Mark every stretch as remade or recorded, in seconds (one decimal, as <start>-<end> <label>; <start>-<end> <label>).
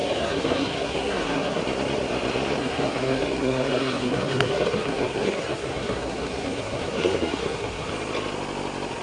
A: 0.0-1.6 remade; 1.6-2.6 recorded; 2.6-7.9 remade; 7.9-9.0 recorded